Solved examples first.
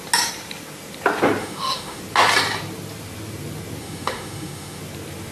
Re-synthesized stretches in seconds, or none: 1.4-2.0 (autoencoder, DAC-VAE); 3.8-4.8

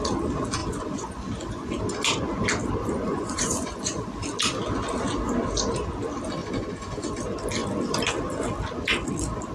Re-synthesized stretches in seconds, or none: 0.6-1.8 (vocoder, Vocos); 3.1-4.1; 6.4-7.1

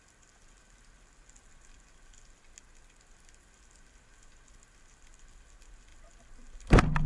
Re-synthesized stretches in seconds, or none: none